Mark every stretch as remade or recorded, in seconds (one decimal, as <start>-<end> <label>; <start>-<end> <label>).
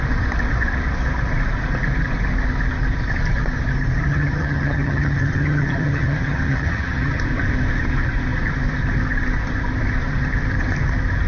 0.0-4.1 recorded; 4.1-7.2 remade; 7.2-11.3 recorded